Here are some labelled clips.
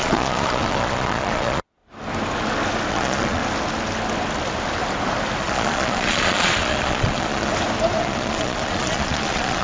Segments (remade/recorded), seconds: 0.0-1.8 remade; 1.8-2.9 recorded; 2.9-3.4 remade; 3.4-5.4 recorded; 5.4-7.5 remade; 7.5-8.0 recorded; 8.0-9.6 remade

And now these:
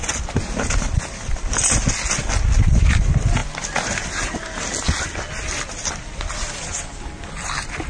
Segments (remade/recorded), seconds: 0.0-7.9 recorded

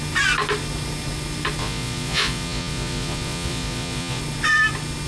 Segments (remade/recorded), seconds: 0.0-1.6 recorded; 1.6-4.2 remade; 4.2-5.1 recorded

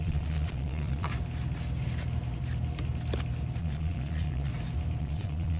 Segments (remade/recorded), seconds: 0.0-1.1 remade; 1.1-3.6 recorded; 3.6-4.5 remade; 4.5-5.0 recorded; 5.0-5.6 remade